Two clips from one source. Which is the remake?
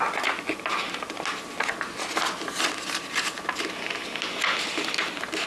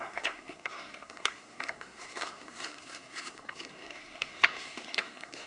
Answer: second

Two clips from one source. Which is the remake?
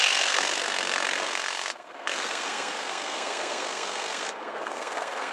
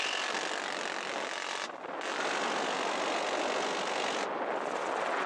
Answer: first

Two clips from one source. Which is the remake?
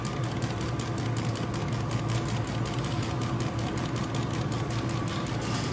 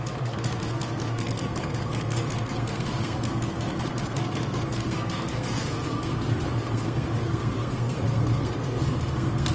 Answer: second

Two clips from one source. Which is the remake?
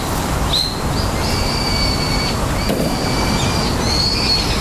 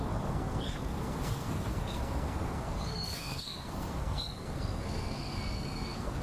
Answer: second